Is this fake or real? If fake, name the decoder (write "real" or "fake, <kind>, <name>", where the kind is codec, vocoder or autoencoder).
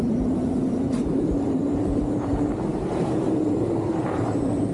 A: fake, vocoder, BigVGAN v2